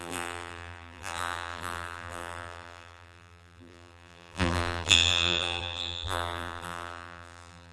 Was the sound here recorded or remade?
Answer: remade